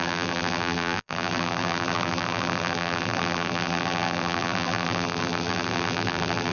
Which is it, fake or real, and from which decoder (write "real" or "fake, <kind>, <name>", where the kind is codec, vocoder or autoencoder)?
fake, vocoder, BigVGAN v2